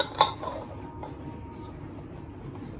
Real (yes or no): yes